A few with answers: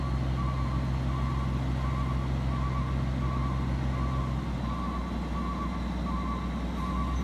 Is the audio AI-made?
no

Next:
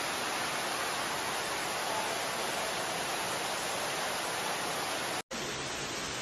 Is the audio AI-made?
no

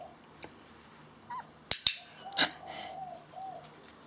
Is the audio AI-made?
no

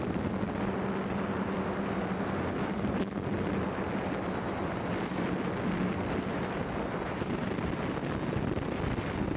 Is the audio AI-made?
no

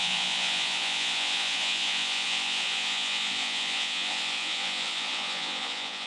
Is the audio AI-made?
yes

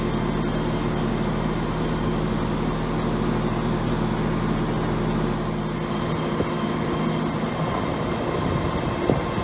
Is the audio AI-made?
no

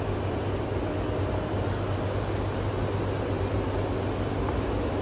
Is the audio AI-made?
no